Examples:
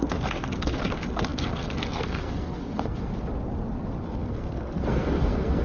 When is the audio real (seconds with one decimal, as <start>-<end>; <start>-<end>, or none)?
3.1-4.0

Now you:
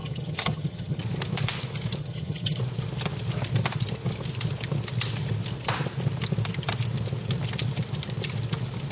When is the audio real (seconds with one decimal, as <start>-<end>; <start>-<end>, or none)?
1.0-2.0; 2.6-8.9

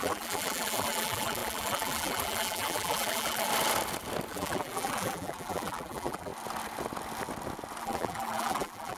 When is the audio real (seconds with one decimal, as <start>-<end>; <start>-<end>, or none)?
3.5-4.3; 6.3-7.8

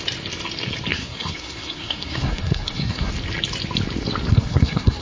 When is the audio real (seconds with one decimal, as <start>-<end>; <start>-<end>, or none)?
0.0-0.9; 3.1-4.3

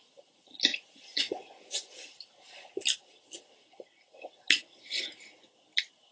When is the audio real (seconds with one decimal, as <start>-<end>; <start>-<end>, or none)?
0.0-0.7; 2.1-6.1

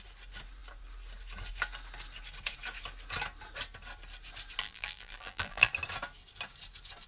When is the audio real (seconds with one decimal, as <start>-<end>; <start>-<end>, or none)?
0.0-4.6; 5.7-7.1

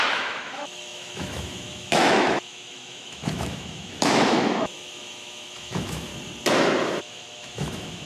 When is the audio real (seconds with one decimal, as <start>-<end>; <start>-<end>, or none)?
6.1-7.0

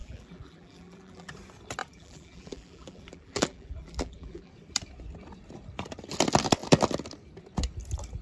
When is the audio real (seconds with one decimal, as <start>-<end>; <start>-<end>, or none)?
1.3-1.8; 4.5-8.2